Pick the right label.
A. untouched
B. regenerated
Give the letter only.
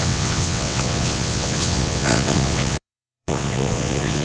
B